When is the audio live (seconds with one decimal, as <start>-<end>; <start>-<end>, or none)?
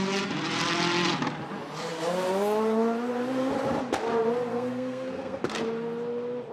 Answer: 0.0-4.5; 5.4-6.5